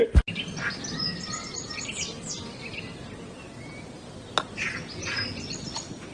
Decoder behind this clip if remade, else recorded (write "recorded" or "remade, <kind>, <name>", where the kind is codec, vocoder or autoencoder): recorded